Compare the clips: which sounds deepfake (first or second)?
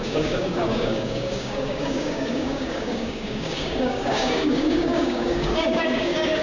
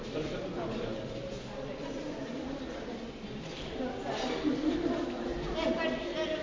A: first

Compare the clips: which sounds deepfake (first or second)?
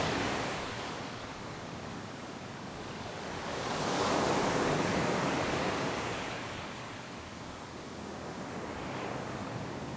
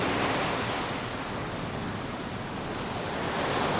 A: first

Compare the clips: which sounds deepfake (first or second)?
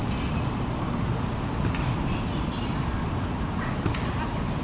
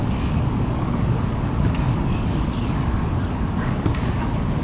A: second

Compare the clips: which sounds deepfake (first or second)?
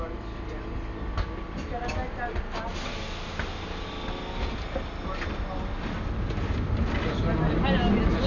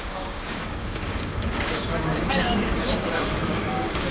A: second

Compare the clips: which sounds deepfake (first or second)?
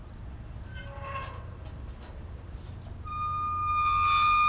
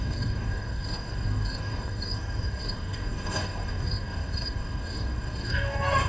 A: second